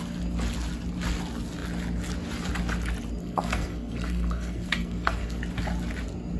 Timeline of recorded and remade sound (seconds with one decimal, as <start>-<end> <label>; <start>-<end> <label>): 0.0-3.2 recorded; 3.2-5.4 remade; 5.4-6.4 recorded